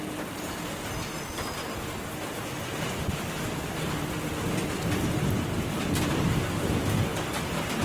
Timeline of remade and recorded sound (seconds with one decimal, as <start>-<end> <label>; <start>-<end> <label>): 0.0-7.8 recorded